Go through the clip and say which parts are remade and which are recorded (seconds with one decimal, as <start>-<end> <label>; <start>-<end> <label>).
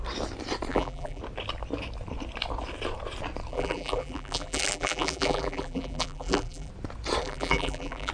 0.0-0.7 recorded; 0.7-1.2 remade; 1.2-3.5 recorded; 3.5-6.7 remade; 6.7-7.2 recorded; 7.2-8.1 remade